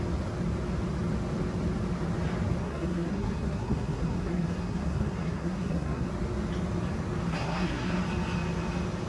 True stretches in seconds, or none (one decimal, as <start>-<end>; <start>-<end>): 0.0-2.6; 6.1-7.3; 8.0-9.1

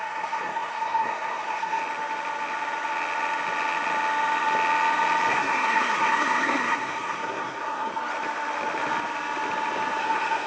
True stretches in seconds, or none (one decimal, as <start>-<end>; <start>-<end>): 1.8-5.3; 7.9-10.0

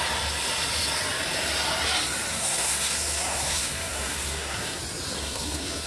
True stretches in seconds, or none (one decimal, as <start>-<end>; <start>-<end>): 0.0-2.3; 4.8-5.2

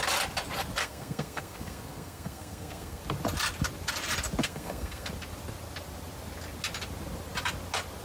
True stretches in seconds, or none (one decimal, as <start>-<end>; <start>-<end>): 0.0-0.8; 3.0-4.4; 5.1-8.0

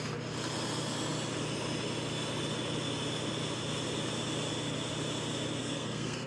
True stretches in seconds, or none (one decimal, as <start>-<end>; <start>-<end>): 0.0-5.6

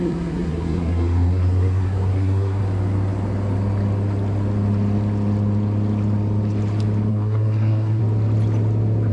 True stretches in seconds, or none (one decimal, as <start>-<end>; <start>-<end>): 2.6-7.1; 8.0-9.1

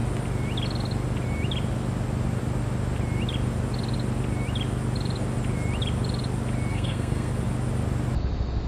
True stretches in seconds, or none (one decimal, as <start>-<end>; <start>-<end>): 0.0-6.7; 7.3-8.7

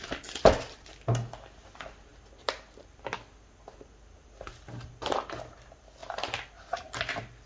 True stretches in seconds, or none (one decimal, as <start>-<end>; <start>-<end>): 0.0-7.5